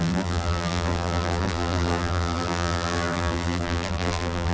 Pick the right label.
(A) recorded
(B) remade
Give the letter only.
B